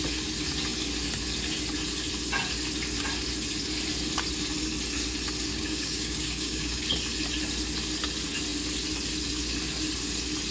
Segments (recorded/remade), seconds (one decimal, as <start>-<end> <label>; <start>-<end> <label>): 0.0-5.5 recorded; 5.5-6.8 remade; 6.8-10.5 recorded